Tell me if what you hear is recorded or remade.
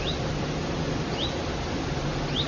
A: recorded